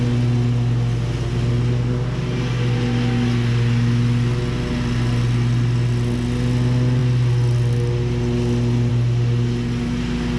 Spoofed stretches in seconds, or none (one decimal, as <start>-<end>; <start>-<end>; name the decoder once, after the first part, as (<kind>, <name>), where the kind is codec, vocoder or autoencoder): none